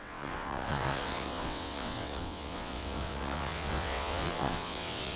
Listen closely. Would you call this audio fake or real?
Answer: fake